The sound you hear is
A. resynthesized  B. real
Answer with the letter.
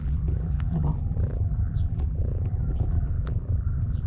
A